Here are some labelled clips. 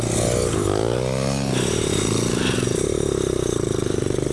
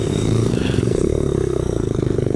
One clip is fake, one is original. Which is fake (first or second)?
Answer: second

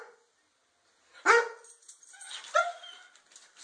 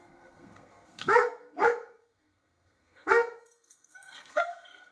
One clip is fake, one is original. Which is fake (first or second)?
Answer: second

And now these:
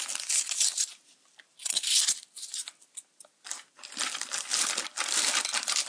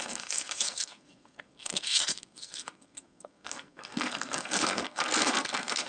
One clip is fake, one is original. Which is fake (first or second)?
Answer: second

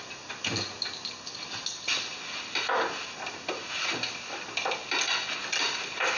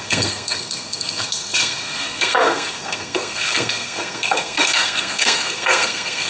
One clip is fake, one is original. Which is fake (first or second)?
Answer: second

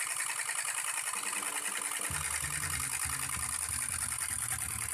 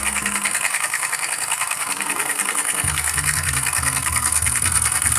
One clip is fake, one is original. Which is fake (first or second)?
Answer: second